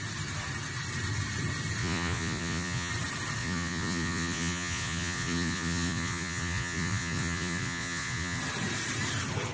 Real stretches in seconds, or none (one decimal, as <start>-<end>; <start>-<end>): 0.0-1.8; 2.9-3.4; 8.4-9.5